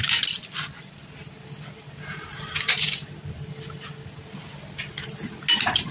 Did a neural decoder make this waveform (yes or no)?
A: no